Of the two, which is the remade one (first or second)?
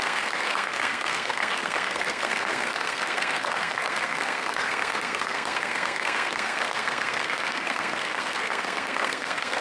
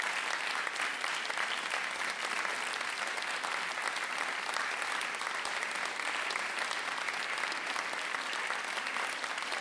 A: first